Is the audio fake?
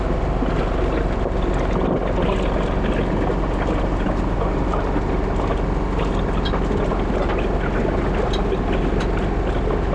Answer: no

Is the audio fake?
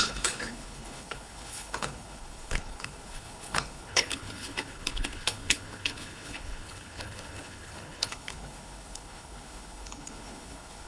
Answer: yes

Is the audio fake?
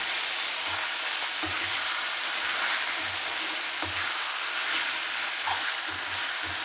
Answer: no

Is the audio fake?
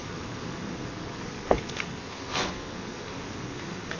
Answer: yes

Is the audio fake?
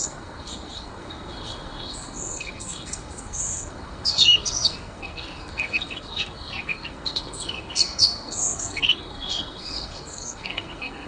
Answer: yes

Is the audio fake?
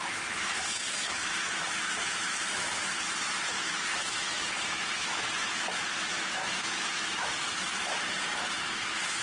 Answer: yes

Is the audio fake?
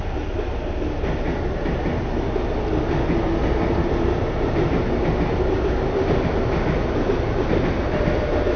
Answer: no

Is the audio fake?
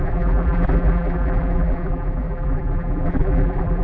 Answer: yes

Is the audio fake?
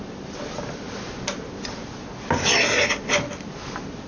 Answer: no